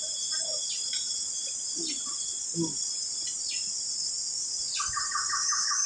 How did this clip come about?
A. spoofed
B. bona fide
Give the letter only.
B